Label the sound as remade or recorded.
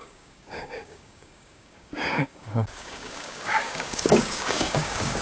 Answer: remade